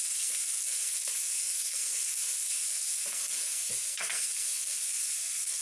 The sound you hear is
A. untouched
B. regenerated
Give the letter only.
B